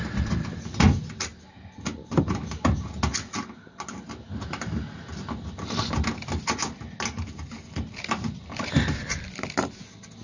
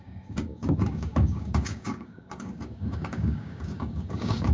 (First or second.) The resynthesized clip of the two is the second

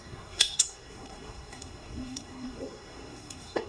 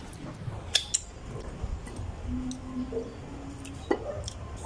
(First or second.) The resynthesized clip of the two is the first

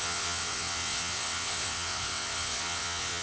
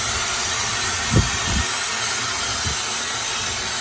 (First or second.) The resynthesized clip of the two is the first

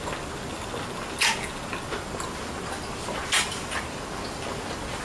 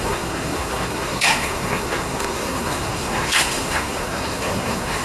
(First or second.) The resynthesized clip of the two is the second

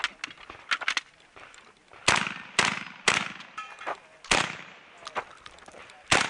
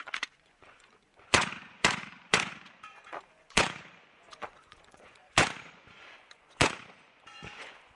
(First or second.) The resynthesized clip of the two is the second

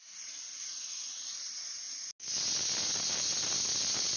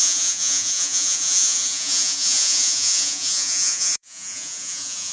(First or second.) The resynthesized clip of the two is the second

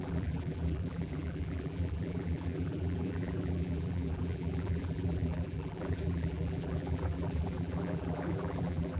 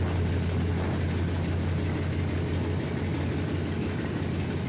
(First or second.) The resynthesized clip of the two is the first